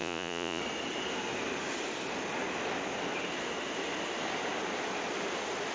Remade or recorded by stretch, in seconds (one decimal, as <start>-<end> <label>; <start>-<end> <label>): 0.0-0.6 remade; 0.6-5.7 recorded